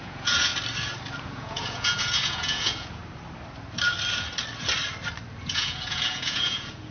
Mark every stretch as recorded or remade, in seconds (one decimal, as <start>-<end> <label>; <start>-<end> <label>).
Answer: 0.0-0.5 remade; 0.5-1.2 recorded; 1.2-3.0 remade; 3.0-5.4 recorded; 5.4-6.9 remade